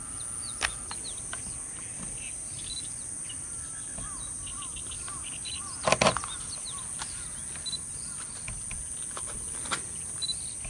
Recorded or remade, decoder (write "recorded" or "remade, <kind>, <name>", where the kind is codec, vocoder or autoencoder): recorded